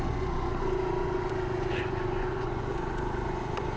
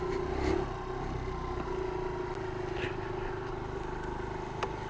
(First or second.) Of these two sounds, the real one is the second